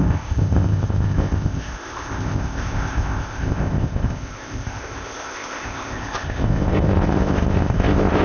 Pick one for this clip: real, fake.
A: fake